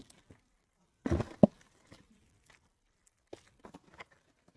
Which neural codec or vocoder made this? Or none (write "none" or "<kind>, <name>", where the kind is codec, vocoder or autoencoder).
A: none